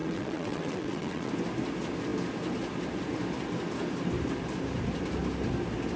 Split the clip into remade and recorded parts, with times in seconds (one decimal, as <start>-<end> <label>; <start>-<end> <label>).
0.0-1.3 remade; 1.3-6.0 recorded